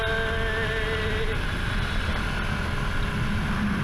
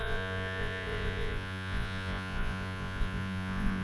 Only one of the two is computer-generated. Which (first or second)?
second